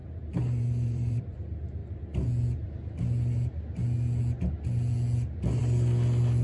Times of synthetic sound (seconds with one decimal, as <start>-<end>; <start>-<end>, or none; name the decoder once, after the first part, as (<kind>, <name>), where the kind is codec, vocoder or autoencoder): 0.0-1.2 (vocoder, BigVGAN v2)